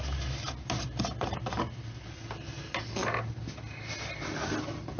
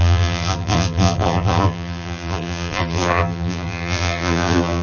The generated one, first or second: second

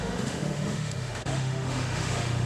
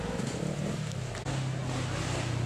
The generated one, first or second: first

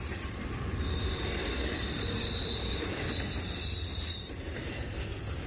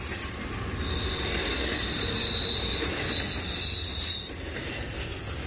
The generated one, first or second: first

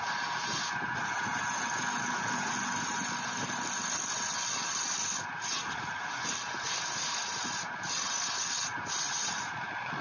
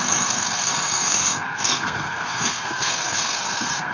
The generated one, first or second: second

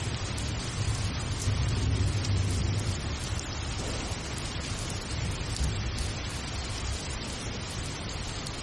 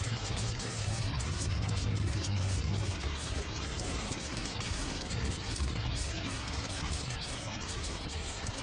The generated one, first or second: second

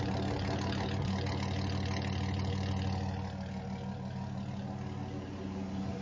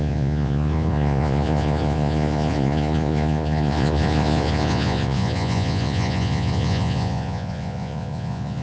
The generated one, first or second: second